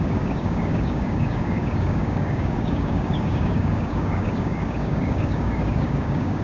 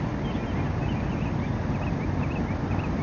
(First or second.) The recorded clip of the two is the second